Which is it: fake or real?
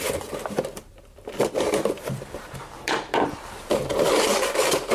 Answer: fake